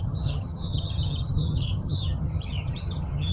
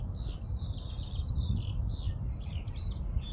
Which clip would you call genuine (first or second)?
second